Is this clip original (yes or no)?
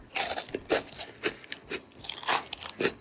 yes